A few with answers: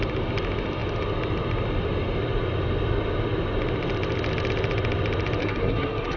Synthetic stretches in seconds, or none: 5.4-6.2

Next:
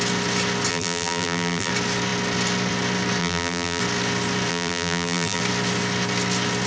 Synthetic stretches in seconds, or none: 0.7-1.7; 3.2-3.8; 4.5-5.4

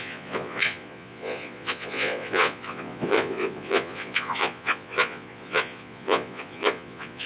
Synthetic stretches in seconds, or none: 0.0-7.3

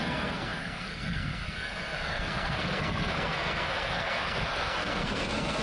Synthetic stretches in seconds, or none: 0.0-5.6

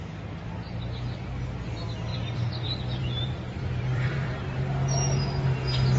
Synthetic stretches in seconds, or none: 2.1-4.6

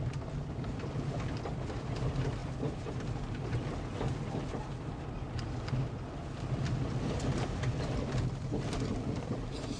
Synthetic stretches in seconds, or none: 0.0-2.4; 6.3-9.8

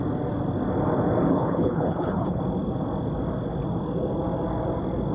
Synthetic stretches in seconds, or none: 1.3-2.4

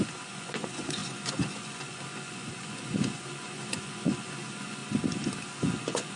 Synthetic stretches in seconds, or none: 0.0-4.8; 5.6-6.2